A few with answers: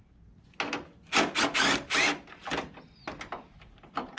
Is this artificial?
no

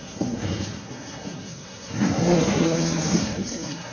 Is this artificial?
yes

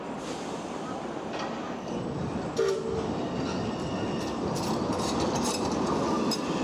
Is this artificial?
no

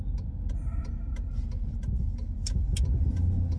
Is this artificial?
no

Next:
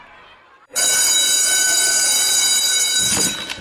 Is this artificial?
yes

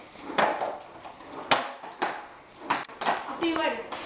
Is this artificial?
no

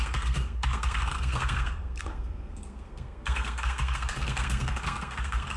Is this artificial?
yes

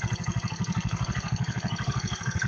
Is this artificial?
yes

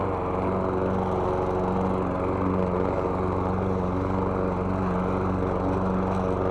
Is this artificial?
no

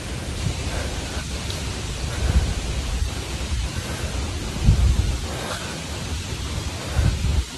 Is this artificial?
no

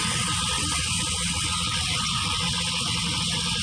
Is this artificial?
yes